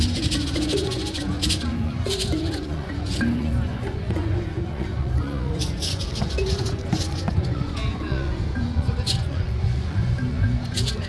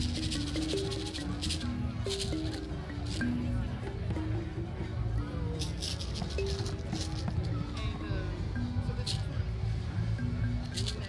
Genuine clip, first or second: second